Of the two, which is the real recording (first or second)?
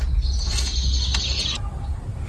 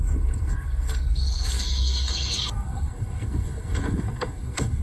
first